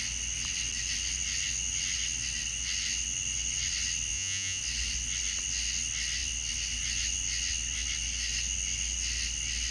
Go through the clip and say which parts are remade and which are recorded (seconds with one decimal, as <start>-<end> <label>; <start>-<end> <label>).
0.0-4.1 recorded; 4.1-4.6 remade; 4.6-9.7 recorded